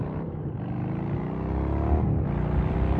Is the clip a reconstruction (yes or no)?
no